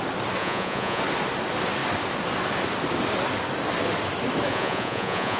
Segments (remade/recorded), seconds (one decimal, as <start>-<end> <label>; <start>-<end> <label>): 0.0-0.4 recorded; 0.4-1.0 remade; 1.0-4.5 recorded; 4.5-5.4 remade